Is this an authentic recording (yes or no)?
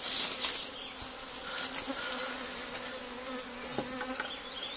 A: yes